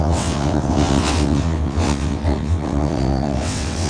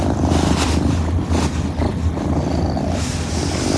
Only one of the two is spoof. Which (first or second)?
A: first